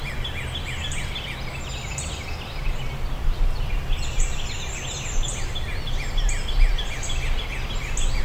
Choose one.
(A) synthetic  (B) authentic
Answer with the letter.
B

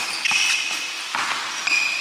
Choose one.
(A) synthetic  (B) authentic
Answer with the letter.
B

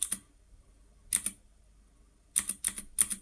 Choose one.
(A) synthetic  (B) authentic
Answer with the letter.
B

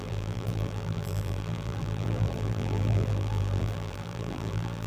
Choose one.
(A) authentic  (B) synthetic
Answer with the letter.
B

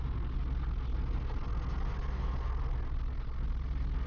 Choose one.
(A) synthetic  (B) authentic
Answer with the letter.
B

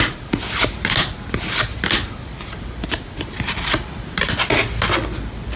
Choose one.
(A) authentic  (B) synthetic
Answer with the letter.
A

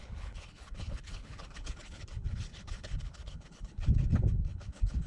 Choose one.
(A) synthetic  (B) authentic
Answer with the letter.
A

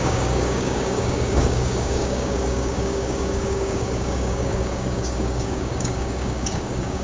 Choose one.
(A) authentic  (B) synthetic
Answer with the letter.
B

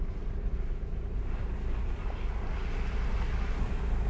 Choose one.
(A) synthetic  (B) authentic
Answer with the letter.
B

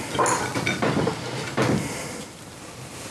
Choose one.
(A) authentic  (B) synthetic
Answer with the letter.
A